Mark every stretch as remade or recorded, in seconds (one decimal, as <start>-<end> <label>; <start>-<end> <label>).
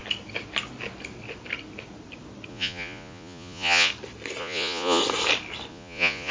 0.0-2.5 recorded; 2.5-3.9 remade; 3.9-4.4 recorded; 4.4-5.0 remade; 5.0-5.7 recorded; 5.7-6.3 remade